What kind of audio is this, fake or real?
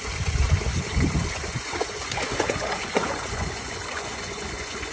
fake